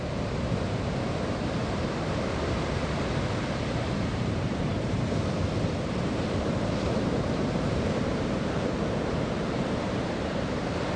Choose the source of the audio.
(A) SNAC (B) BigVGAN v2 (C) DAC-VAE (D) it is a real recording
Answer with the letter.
B